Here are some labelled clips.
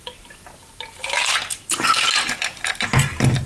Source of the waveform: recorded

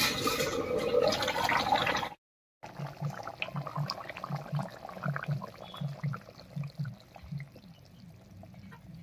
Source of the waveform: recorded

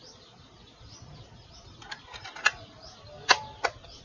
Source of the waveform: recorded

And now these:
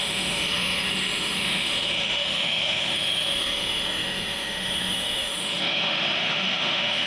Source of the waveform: remade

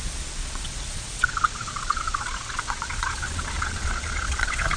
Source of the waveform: remade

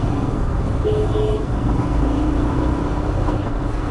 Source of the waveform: remade